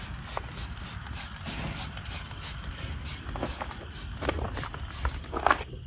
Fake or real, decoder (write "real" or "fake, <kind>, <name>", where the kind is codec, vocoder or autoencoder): real